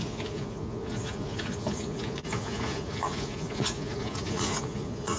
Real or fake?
fake